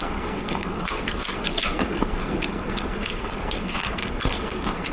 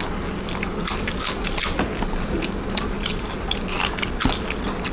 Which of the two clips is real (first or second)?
second